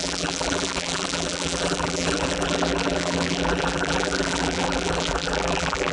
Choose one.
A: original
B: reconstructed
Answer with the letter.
B